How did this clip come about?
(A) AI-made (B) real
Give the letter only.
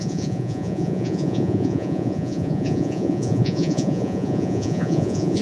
A